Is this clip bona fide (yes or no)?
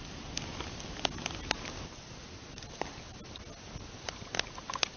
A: yes